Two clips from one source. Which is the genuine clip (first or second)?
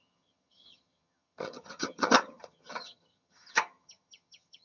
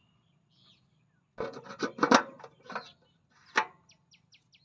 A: second